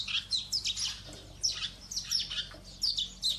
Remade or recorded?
recorded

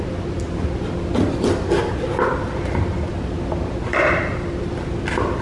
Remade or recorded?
recorded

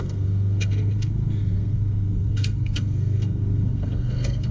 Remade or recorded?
remade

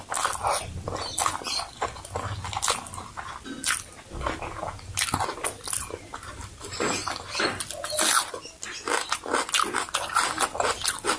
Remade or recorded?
recorded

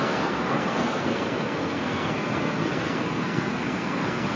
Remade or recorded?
remade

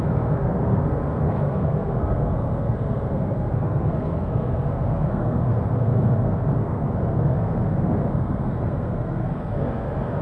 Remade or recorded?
remade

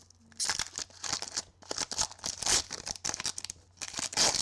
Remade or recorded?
recorded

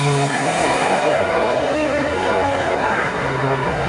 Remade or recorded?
remade